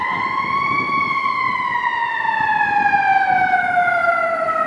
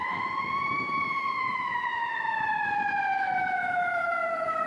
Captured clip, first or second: first